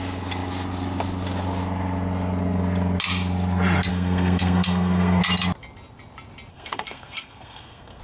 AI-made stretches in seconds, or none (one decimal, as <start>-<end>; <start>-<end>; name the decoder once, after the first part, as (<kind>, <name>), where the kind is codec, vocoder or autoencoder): 3.9-5.2 (codec, SNAC); 6.5-8.0